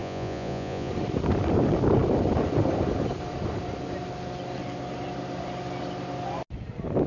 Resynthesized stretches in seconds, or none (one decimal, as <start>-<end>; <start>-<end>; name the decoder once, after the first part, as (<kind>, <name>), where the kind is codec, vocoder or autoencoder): 0.0-0.9 (vocoder, Vocos)